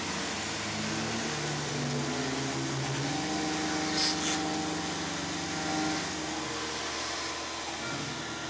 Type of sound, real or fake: real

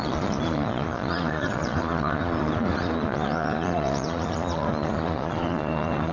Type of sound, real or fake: fake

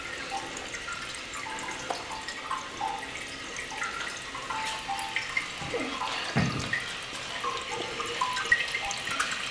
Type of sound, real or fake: real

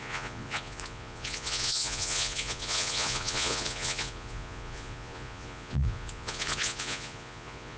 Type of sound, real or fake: fake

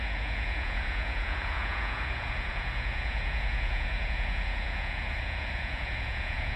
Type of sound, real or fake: fake